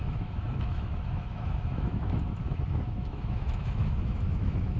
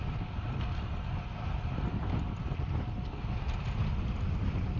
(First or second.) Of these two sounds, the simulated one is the first